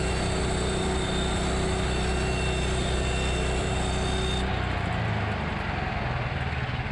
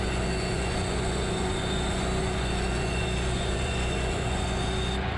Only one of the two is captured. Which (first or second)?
first